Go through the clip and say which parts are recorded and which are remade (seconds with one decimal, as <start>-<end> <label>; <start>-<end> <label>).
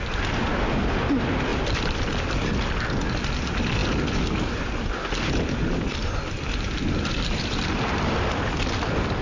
0.0-1.5 recorded; 1.5-2.1 remade; 2.1-9.2 recorded